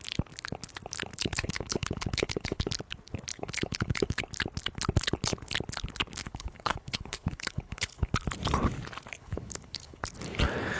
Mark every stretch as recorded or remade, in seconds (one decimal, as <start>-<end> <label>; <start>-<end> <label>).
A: 0.0-1.1 recorded; 1.1-2.7 remade; 2.7-3.3 recorded; 3.3-4.2 remade; 4.2-6.2 recorded; 6.2-8.1 remade; 8.1-9.2 recorded; 9.2-10.0 remade; 10.0-10.8 recorded